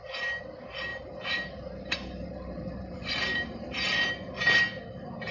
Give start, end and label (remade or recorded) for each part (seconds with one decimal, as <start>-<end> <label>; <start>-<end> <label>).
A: 0.0-0.9 recorded; 0.9-4.1 remade; 4.1-5.3 recorded